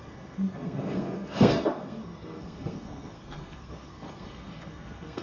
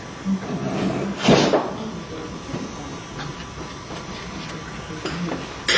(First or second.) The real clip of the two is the second